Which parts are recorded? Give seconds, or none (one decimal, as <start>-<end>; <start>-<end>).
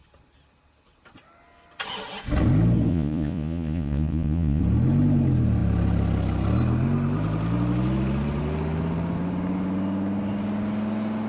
0.0-2.9; 4.6-11.3